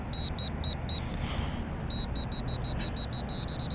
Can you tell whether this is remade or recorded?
recorded